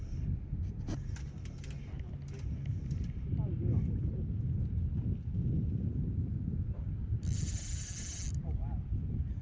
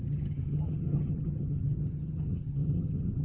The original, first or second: first